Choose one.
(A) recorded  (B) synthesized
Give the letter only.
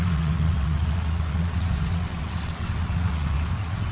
B